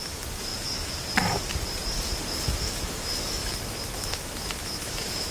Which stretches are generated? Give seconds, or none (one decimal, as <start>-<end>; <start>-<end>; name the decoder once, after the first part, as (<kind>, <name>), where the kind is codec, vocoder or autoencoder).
0.0-0.5 (autoencoder, DAC-VAE); 2.4-5.3